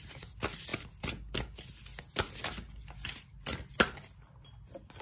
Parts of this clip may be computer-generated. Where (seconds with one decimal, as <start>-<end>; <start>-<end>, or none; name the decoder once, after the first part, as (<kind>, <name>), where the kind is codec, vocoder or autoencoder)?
none